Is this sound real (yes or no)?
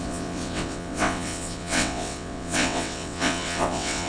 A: no